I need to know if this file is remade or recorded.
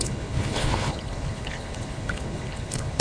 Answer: remade